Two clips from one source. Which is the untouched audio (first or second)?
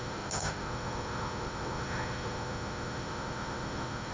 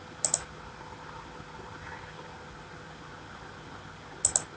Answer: second